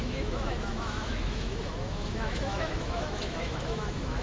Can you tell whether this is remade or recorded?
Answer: remade